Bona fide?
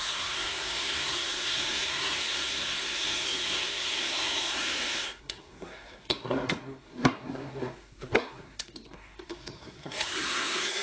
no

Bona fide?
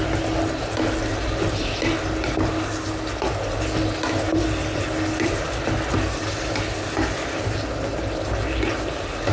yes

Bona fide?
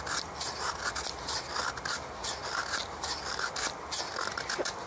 yes